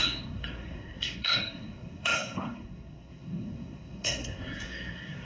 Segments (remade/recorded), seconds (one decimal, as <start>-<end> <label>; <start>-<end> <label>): 0.0-5.2 remade